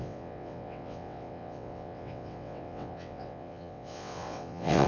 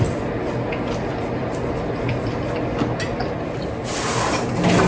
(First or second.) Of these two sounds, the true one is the second